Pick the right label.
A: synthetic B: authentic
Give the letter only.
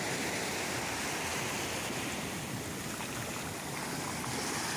B